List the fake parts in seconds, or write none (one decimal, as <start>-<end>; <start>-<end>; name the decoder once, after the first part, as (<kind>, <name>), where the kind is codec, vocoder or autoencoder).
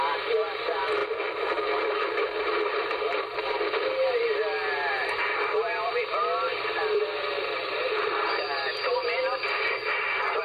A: 0.0-1.0 (vocoder, BigVGAN v2); 1.8-10.4